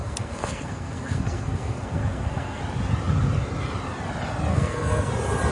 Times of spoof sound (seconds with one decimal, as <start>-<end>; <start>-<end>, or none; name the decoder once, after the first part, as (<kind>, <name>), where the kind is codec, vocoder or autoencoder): 0.0-2.6 (codec, SNAC); 4.5-5.1